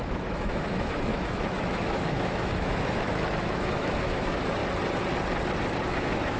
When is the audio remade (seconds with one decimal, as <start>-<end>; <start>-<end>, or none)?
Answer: 0.0-4.6; 5.8-6.4